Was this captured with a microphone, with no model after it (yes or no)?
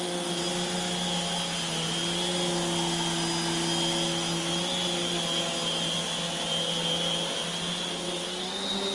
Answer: yes